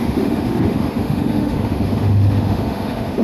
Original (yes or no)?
no